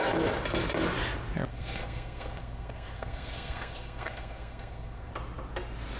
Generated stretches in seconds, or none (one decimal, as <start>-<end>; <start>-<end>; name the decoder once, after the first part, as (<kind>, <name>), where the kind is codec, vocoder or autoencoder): 1.5-5.1 (codec, SNAC)